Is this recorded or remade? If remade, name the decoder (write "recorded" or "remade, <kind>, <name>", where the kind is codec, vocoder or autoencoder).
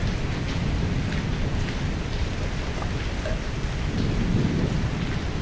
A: recorded